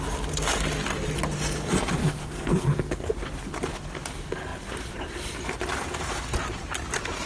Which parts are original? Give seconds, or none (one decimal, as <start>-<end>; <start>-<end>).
0.0-2.0; 3.1-7.3